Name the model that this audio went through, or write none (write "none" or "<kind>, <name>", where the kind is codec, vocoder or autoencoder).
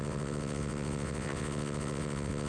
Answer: vocoder, WaveNeXt